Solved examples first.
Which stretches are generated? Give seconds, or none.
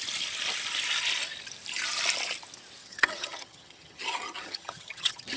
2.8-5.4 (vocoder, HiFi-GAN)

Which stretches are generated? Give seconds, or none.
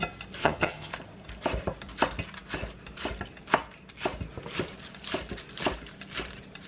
0.4-0.9 (vocoder, HiFi-GAN)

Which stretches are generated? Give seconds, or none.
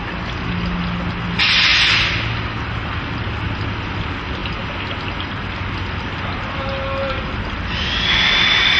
none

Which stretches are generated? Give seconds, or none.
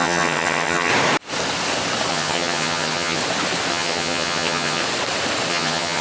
0.0-0.9 (vocoder, HiFi-GAN); 2.1-3.2; 3.7-4.8; 5.5-6.0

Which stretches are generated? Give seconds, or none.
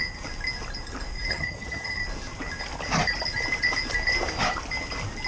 1.3-2.0 (vocoder, HiFi-GAN)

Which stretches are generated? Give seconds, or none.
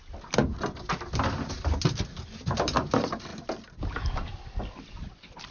none